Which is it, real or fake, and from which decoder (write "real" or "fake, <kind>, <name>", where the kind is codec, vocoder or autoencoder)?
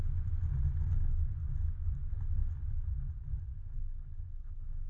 real